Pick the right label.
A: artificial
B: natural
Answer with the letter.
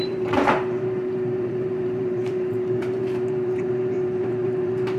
A